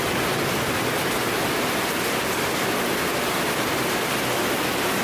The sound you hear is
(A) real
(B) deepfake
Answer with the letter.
A